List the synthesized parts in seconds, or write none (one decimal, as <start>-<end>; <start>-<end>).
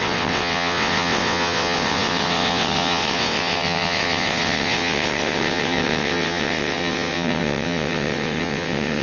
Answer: 0.0-9.0